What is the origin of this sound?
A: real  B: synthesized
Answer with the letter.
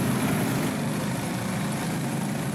A